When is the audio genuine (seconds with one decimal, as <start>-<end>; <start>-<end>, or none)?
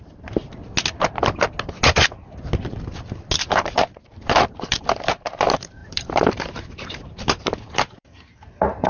0.6-3.5